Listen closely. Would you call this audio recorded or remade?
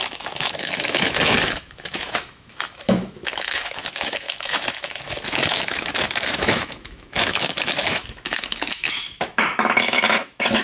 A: remade